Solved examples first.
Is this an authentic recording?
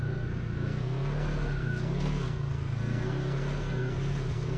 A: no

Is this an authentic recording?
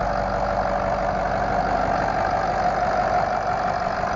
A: yes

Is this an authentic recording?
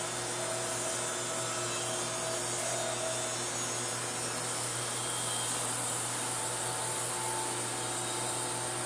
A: yes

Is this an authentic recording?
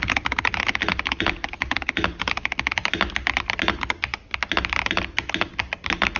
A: yes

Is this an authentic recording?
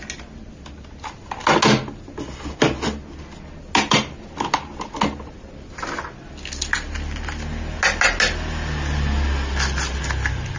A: yes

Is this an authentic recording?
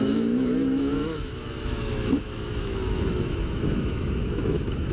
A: no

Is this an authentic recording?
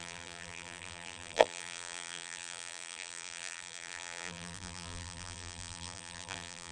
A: no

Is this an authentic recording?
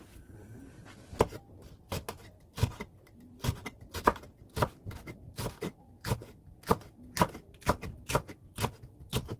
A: yes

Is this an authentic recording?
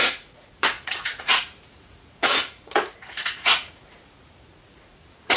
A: no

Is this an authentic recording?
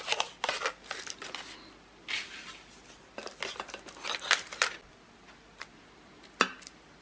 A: yes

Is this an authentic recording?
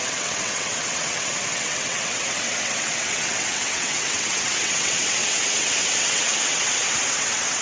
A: no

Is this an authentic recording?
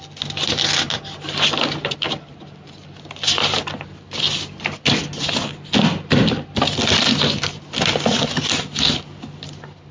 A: yes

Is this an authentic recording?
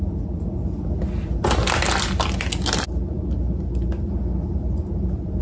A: yes